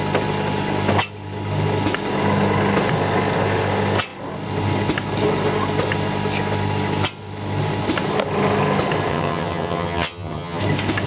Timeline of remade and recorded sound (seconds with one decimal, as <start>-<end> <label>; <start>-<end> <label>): 0.0-9.1 recorded; 9.1-10.6 remade; 10.6-11.1 recorded